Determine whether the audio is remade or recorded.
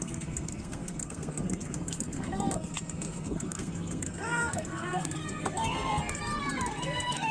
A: remade